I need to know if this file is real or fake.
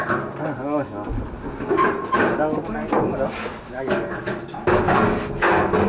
real